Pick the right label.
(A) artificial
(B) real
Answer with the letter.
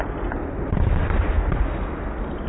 B